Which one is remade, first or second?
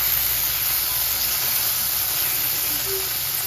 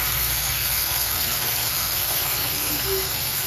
second